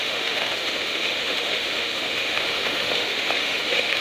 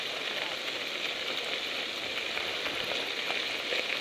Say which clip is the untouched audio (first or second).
second